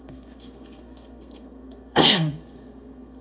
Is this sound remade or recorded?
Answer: remade